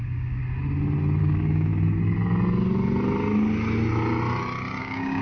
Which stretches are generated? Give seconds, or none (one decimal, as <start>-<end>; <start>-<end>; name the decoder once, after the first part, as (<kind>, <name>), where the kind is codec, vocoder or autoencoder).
0.0-0.4 (codec, DAC); 1.2-1.7; 4.8-5.2